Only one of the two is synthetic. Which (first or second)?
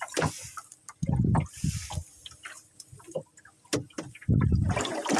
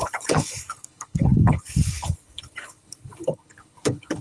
second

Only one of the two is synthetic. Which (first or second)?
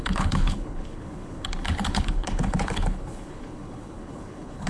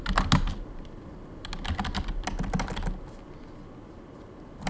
first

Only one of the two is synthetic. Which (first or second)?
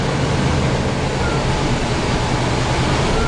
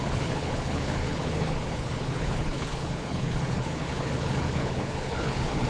second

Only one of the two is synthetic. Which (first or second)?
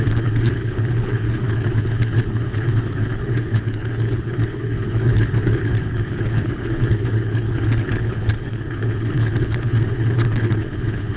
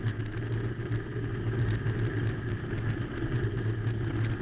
first